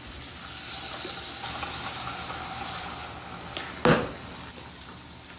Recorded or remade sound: recorded